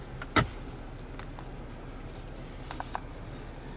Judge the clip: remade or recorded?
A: recorded